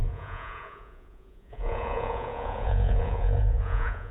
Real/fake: fake